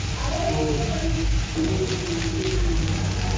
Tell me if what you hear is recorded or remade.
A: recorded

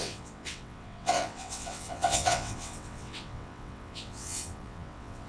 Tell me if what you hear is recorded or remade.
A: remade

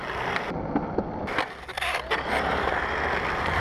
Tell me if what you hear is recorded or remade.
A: recorded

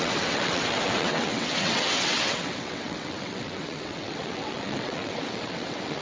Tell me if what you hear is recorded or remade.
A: remade